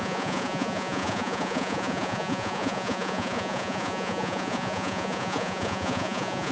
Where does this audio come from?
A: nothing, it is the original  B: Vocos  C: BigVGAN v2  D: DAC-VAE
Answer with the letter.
B